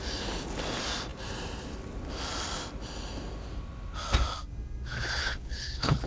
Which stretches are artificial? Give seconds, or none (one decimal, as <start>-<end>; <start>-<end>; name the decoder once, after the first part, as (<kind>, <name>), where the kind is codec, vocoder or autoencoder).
5.2-6.1 (codec, HILCodec)